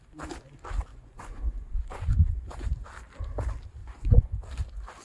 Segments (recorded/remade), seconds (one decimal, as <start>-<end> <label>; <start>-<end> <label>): 0.0-0.9 recorded; 0.9-2.7 remade; 2.7-3.8 recorded; 3.8-4.3 remade; 4.3-5.0 recorded